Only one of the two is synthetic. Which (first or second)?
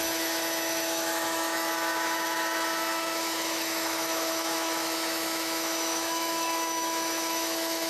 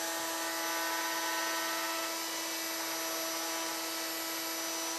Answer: first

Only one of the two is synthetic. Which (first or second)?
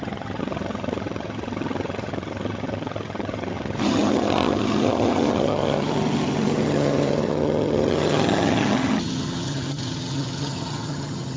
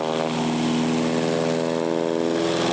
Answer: first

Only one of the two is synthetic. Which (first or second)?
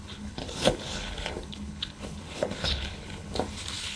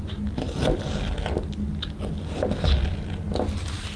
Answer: first